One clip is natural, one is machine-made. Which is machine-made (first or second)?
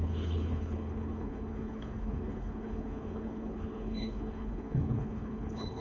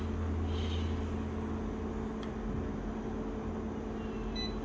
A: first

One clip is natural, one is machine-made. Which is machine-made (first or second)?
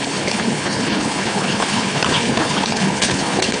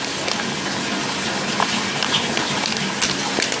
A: first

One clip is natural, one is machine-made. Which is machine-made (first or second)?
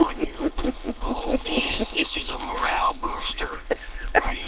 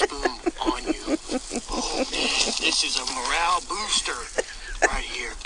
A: first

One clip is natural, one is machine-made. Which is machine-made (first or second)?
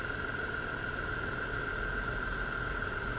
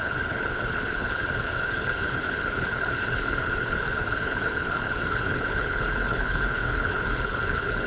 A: second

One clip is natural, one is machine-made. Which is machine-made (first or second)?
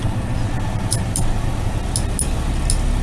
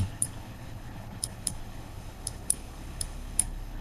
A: second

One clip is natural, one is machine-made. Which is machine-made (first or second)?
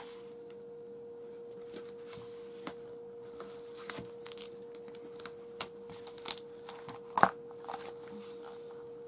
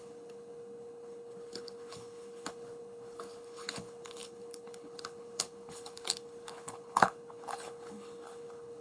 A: second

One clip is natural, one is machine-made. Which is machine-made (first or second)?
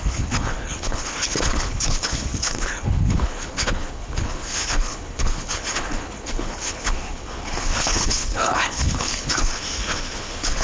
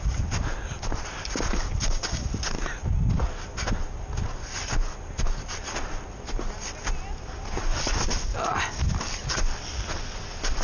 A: first